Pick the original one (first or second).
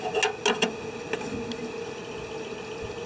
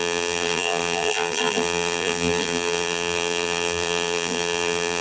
first